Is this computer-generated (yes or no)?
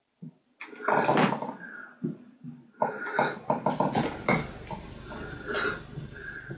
no